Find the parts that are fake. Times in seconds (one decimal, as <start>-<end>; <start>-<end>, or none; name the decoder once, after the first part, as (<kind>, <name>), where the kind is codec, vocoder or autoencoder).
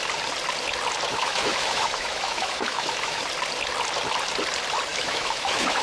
1.1-3.2 (autoencoder, DAC-VAE); 4.9-5.8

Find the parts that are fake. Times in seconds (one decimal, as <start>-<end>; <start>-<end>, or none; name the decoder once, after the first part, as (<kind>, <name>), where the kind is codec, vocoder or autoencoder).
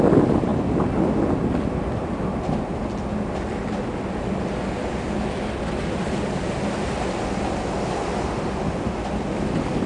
none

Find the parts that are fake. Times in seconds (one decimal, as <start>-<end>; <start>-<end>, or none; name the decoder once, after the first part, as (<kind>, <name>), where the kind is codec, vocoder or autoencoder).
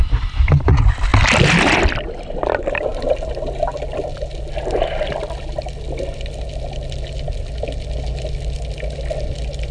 none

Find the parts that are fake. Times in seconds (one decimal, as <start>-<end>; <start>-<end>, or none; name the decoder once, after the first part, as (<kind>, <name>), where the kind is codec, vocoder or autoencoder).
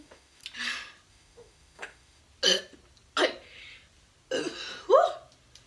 0.0-0.4 (autoencoder, DAC-VAE); 1.1-2.2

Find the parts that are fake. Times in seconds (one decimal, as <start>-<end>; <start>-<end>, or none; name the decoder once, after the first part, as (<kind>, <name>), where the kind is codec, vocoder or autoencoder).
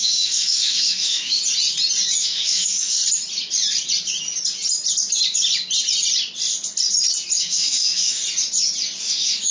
0.0-1.4 (autoencoder, DAC-VAE); 2.2-3.0; 7.4-8.2; 9.0-9.5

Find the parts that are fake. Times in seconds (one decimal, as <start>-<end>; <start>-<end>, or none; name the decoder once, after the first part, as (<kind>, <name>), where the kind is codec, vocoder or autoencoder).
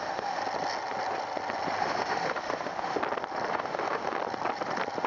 0.0-0.4 (autoencoder, DAC-VAE); 1.8-3.0; 3.5-4.2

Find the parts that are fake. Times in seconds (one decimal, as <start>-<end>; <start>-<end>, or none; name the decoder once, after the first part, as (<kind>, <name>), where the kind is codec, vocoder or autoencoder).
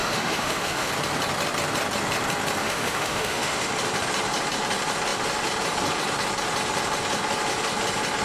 0.0-0.9 (autoencoder, DAC-VAE); 2.6-3.7